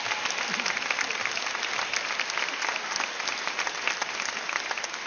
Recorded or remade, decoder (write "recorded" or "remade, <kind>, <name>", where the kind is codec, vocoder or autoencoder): recorded